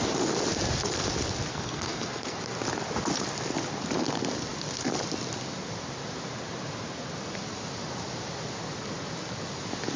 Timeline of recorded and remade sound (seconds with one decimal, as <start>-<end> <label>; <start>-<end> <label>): 0.0-1.5 recorded; 1.5-2.4 remade; 2.4-10.0 recorded